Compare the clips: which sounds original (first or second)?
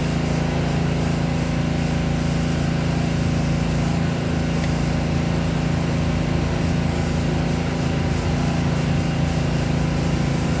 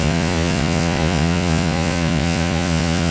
first